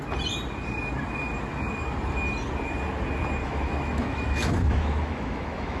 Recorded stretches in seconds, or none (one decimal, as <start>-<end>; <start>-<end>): 0.0-3.4